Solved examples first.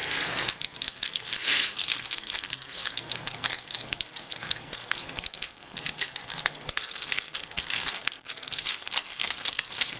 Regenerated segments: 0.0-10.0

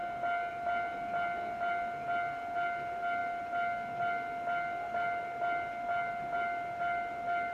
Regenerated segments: none